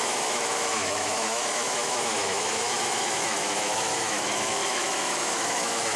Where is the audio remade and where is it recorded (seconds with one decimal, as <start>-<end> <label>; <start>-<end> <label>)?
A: 0.0-6.0 remade